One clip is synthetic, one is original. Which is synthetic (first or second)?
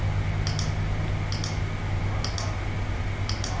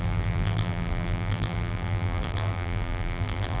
second